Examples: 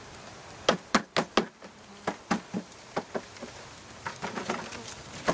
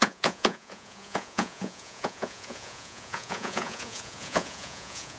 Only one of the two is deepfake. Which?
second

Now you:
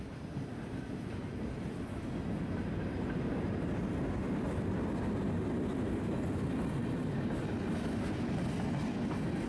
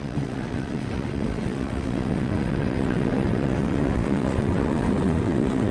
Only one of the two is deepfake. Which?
second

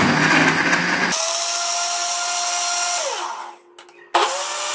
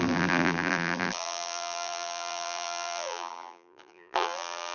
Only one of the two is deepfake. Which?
second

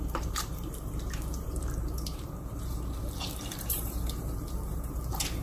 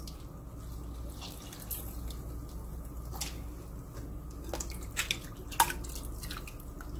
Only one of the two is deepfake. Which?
first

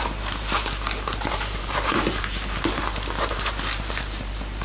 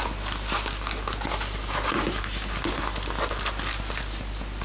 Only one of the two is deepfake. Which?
first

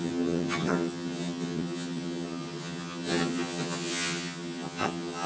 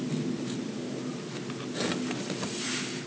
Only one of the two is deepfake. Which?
first